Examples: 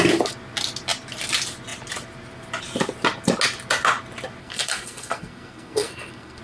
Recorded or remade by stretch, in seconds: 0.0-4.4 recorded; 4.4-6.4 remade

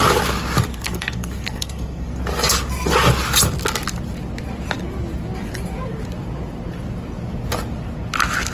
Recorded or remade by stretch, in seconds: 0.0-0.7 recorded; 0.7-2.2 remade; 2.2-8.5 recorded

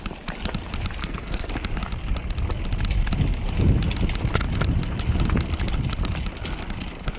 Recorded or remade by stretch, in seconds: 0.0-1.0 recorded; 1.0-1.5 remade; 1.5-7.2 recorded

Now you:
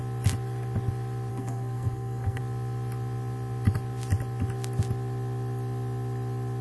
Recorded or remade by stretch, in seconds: 0.0-1.3 recorded; 1.3-2.4 remade; 2.4-6.6 recorded

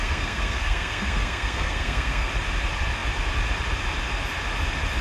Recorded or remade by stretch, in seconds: 0.0-2.3 remade; 2.3-5.0 recorded

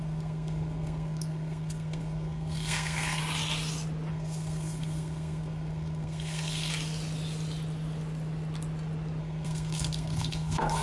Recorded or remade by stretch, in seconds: 0.0-3.2 remade; 3.2-4.1 recorded; 4.1-6.7 remade; 6.7-9.2 recorded; 9.2-10.8 remade

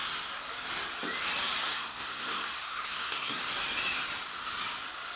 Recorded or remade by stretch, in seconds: 0.0-1.6 recorded; 1.6-3.4 remade; 3.4-5.2 recorded

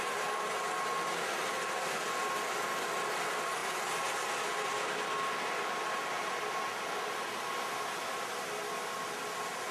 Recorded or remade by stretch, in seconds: 0.0-9.7 recorded